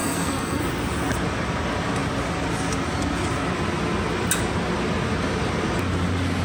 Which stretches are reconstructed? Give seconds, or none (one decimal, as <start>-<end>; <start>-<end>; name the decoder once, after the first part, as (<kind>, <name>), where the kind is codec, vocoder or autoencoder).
0.0-0.6 (codec, SNAC)